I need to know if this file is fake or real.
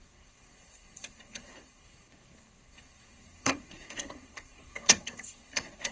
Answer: fake